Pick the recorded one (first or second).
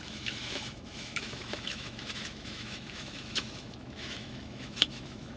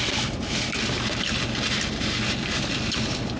second